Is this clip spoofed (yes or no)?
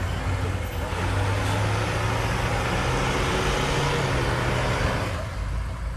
no